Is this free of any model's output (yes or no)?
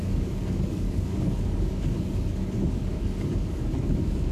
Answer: no